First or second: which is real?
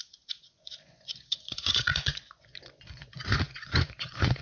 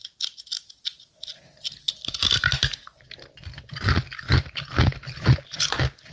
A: second